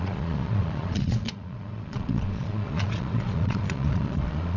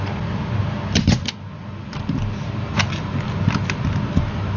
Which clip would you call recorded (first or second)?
second